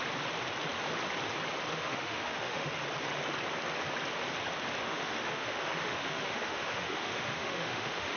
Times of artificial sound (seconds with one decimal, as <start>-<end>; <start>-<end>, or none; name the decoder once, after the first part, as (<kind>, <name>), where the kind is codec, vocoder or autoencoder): 1.7-2.7 (autoencoder, DAC-VAE); 4.8-8.2